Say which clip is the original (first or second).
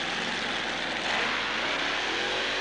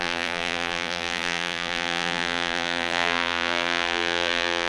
first